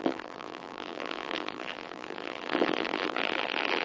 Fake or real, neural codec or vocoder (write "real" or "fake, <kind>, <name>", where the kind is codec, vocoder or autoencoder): fake, vocoder, BigVGAN v2